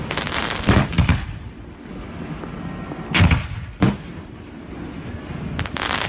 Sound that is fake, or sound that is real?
real